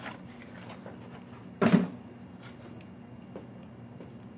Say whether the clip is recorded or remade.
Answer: recorded